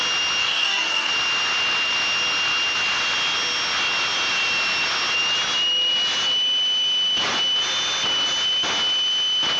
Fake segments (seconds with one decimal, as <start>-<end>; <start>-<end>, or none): 0.4-1.1